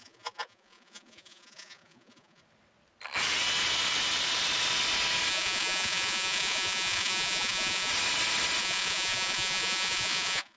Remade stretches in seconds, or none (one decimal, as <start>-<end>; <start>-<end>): 0.0-2.4; 5.3-7.9; 8.6-10.6